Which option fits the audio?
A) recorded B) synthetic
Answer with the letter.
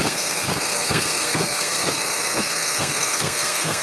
B